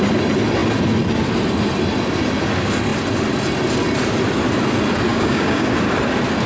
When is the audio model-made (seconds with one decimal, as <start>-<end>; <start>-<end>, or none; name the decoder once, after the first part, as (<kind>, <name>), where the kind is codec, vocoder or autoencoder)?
5.1-5.7 (codec, DAC)